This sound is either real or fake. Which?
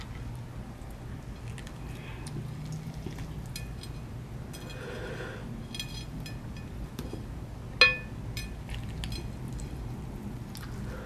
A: real